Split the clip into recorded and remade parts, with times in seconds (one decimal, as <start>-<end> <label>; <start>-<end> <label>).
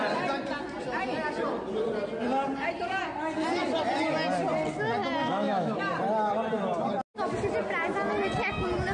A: 0.0-5.2 recorded; 5.2-5.8 remade; 5.8-8.9 recorded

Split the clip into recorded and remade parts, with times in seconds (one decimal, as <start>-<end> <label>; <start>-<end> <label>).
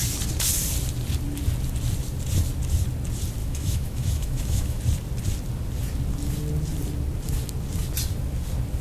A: 0.0-3.4 recorded; 3.4-4.8 remade; 4.8-8.8 recorded